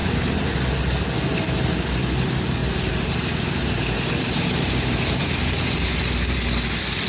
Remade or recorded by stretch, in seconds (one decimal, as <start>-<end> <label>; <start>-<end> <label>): 0.0-2.6 recorded; 2.6-6.4 remade; 6.4-7.1 recorded